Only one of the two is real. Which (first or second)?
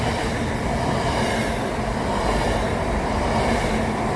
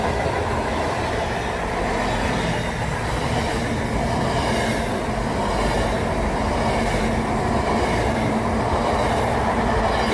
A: second